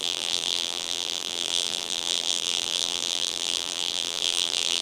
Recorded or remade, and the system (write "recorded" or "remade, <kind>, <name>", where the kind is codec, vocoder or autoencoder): remade, vocoder, BigVGAN v2